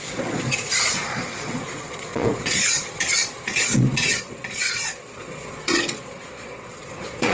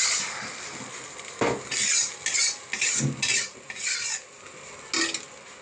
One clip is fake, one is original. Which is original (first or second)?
second